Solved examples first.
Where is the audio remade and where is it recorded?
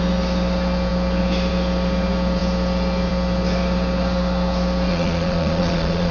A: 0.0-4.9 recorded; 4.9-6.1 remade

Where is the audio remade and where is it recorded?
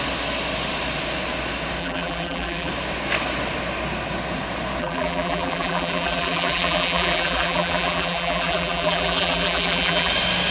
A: 0.0-1.8 recorded; 1.8-2.7 remade; 2.7-4.8 recorded; 4.8-10.1 remade; 10.1-10.5 recorded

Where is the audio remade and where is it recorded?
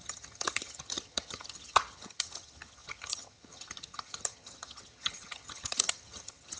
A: 0.0-6.6 remade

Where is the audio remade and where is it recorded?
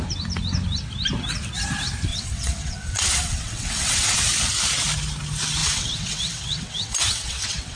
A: 0.0-2.1 recorded; 2.1-4.2 remade; 4.2-5.6 recorded; 5.6-7.8 remade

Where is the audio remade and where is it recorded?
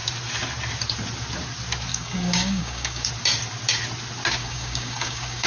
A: 0.0-1.9 recorded; 1.9-3.1 remade; 3.1-4.4 recorded; 4.4-5.5 remade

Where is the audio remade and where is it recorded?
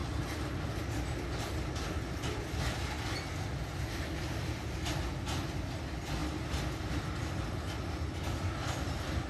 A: 0.0-9.3 recorded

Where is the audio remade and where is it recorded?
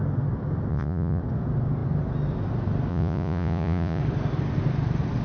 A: 0.0-0.7 recorded; 0.7-1.2 remade; 1.2-2.9 recorded; 2.9-4.0 remade; 4.0-5.2 recorded